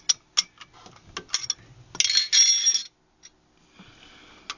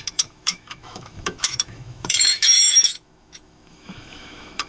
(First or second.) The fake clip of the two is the second